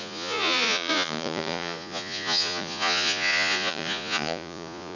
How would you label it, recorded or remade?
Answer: remade